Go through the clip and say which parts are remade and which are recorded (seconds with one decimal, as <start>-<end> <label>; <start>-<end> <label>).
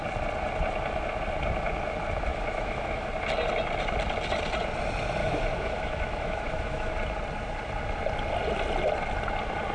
0.0-2.3 recorded; 2.3-3.1 remade; 3.1-5.2 recorded; 5.2-6.9 remade; 6.9-9.7 recorded